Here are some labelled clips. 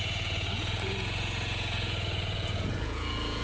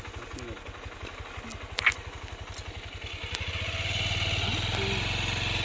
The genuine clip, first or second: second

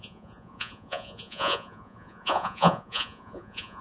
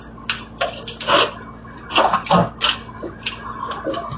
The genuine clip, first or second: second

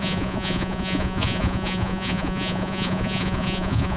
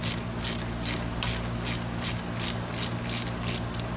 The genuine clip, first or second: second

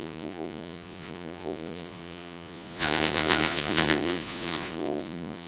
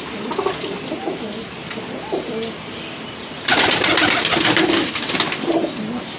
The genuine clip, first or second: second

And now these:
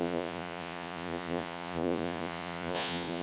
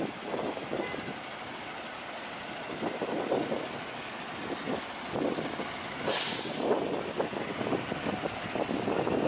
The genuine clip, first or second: second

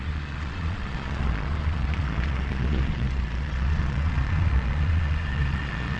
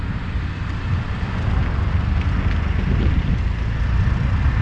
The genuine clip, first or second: second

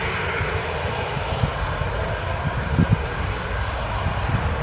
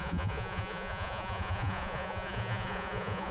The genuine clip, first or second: first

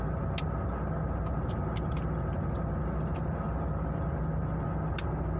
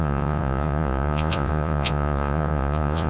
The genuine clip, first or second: first